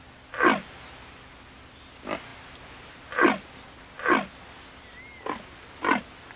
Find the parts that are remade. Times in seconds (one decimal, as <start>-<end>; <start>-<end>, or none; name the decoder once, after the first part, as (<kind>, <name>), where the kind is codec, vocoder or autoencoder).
none